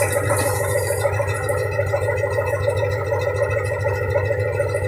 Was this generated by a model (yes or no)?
no